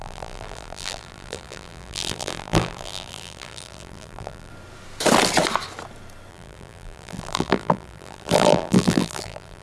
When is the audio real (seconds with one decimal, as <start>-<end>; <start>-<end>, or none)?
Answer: 4.5-6.3